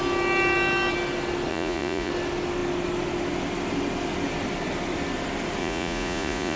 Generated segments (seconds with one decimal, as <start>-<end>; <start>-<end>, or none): 1.5-2.1; 5.6-6.6